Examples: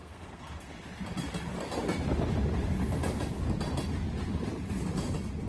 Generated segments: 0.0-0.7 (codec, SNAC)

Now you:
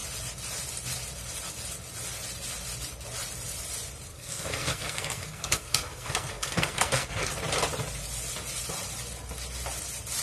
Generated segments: 4.1-7.3 (codec, SNAC)

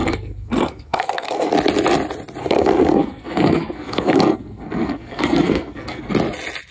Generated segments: 0.0-1.5 (codec, SNAC); 2.4-6.1

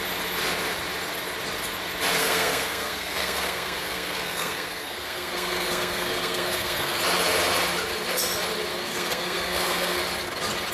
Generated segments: 2.2-7.0 (codec, SNAC); 8.7-10.0